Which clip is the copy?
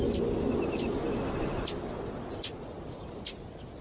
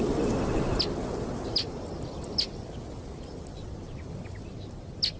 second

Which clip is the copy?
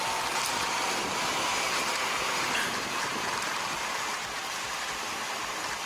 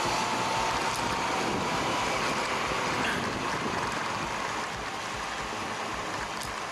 first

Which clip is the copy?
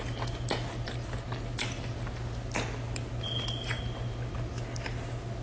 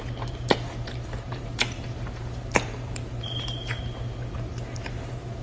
second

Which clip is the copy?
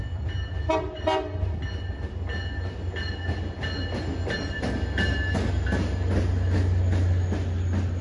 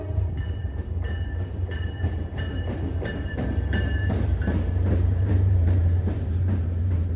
second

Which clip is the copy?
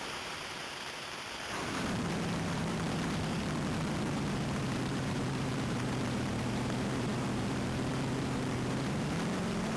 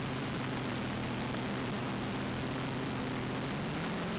first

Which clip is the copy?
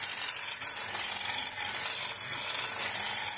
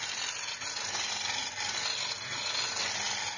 first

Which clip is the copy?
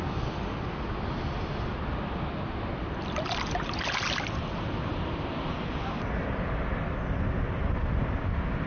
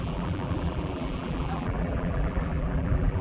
second